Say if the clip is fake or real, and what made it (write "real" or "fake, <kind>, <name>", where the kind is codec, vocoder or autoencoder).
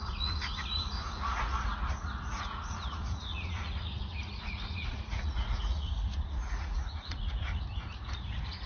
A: fake, vocoder, Vocos